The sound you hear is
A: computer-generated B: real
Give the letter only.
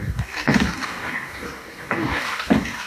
A